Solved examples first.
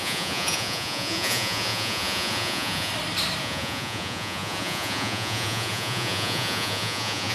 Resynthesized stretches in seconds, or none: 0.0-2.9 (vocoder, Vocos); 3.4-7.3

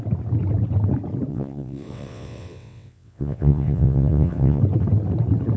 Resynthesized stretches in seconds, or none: 1.3-4.6 (vocoder, WaveNeXt)

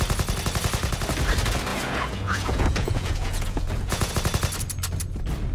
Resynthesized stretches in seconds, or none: 1.7-4.1 (vocoder, Vocos)

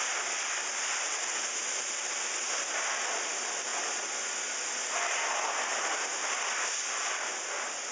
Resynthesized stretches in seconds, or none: none

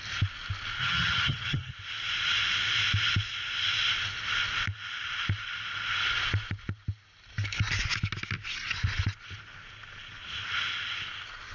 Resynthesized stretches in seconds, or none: 0.8-1.7 (vocoder, HiFi-GAN)

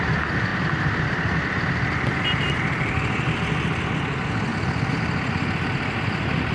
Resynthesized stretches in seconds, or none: 0.5-3.5 (vocoder, BigVGAN v2); 4.5-6.5

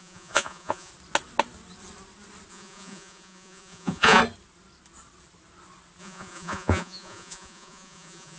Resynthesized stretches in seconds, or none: 0.0-0.9 (vocoder, Vocos); 2.5-4.2; 6.0-8.4